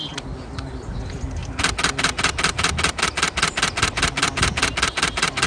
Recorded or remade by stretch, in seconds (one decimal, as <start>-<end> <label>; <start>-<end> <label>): 0.0-5.5 recorded